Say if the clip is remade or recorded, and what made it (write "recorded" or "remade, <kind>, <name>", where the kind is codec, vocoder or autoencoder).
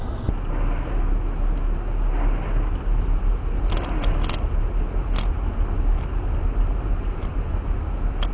recorded